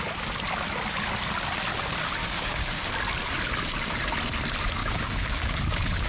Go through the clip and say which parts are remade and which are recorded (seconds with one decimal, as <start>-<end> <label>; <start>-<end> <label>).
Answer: 0.0-2.2 recorded; 2.2-2.9 remade; 2.9-4.8 recorded; 4.8-6.1 remade